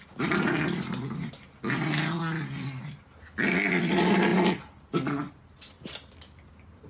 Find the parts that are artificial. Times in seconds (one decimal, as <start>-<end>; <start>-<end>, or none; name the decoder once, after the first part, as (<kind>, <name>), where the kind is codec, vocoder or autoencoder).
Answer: none